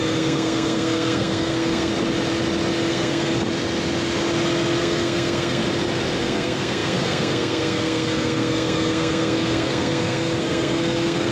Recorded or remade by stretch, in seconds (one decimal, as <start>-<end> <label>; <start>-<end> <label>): 0.0-1.9 remade; 1.9-2.9 recorded; 2.9-3.3 remade; 3.3-4.8 recorded; 4.8-5.6 remade; 5.6-6.2 recorded; 6.2-11.3 remade